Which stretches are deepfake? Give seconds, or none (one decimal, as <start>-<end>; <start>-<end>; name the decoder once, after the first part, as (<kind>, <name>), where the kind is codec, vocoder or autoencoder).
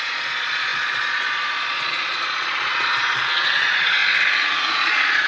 0.0-4.0 (vocoder, Vocos); 4.7-5.3